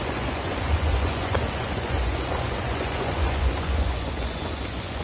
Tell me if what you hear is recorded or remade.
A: remade